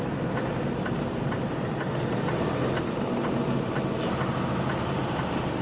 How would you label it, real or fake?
real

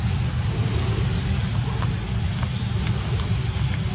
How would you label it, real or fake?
real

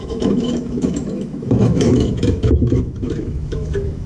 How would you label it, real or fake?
fake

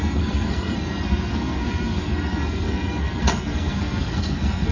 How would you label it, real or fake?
fake